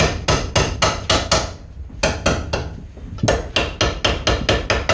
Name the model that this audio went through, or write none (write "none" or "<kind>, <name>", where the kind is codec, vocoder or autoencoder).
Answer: none